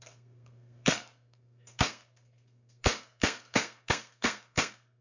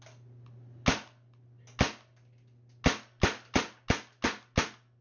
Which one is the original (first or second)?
second